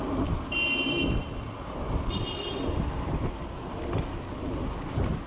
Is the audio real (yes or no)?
yes